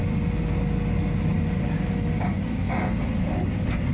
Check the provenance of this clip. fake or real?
real